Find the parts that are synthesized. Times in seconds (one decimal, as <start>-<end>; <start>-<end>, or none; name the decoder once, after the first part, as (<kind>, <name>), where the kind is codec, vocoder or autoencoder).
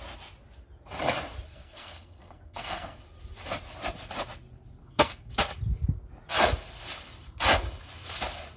1.5-3.0 (codec, SNAC); 4.8-5.3